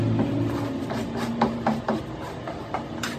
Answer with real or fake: real